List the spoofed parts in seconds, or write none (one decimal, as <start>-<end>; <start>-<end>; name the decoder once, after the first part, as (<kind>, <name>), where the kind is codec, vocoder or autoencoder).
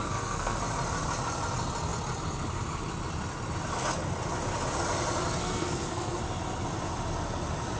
0.0-0.6 (codec, SNAC); 5.4-6.2